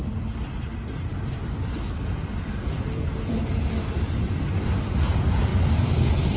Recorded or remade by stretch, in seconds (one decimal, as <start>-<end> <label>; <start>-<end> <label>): 0.0-6.4 remade